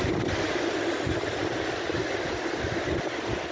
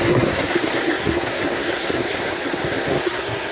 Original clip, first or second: first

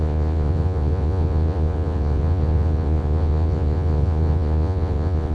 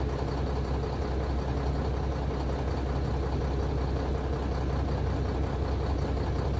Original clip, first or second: second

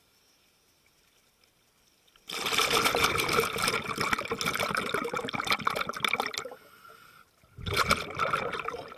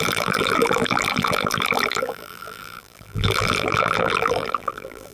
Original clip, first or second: first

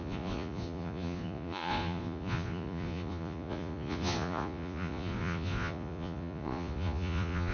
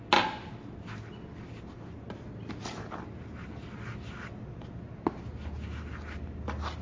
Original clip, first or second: second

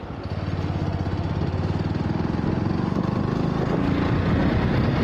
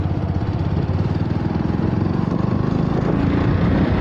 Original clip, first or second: first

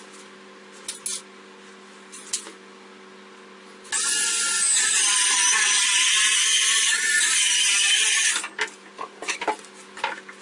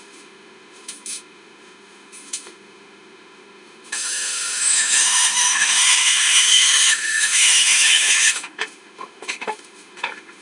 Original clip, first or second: first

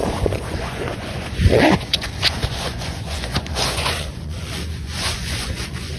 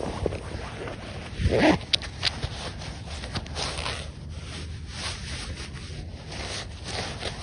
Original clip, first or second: second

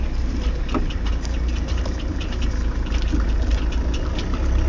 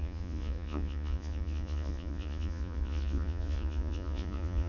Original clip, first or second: first